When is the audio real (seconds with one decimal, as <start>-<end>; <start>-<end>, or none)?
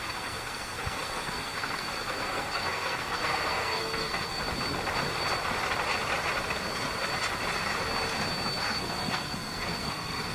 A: 4.4-8.6